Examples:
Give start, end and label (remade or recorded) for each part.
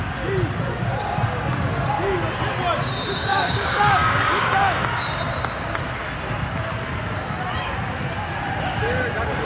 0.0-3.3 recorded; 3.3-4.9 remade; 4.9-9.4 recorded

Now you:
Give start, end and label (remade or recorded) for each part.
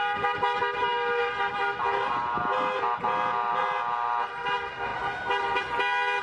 0.0-6.2 recorded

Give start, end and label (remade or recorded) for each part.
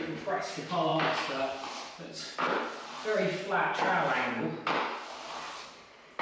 0.0-6.2 recorded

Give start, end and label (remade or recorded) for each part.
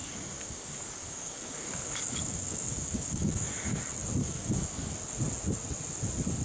0.0-3.8 remade; 3.8-4.2 recorded; 4.2-4.9 remade; 4.9-6.4 recorded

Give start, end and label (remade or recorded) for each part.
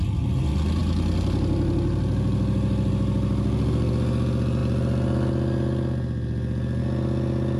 0.0-7.6 recorded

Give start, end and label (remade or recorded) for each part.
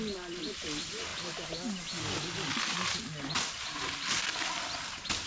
0.0-5.3 recorded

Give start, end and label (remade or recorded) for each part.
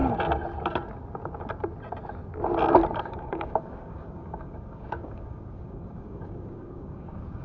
0.0-3.0 recorded; 3.0-7.4 remade